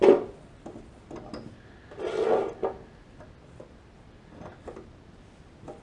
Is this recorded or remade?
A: recorded